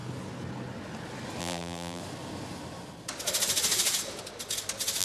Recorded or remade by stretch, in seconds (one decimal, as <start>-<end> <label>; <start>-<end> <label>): 0.0-1.4 recorded; 1.4-2.0 remade; 2.0-5.0 recorded